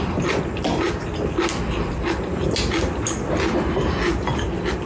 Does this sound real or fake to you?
real